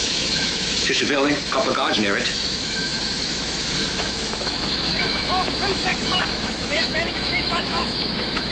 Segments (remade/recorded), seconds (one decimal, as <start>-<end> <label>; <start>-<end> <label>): 0.0-8.5 remade